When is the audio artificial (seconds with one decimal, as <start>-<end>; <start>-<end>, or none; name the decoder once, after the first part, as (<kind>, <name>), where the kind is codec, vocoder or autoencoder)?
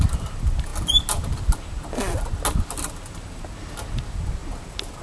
none